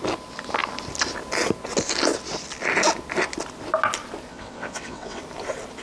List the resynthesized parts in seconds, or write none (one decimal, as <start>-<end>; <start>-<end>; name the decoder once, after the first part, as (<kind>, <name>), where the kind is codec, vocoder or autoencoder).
4.3-5.2 (vocoder, WaveNeXt)